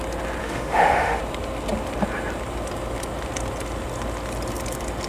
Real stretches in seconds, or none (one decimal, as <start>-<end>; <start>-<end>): 0.0-0.4; 1.2-5.1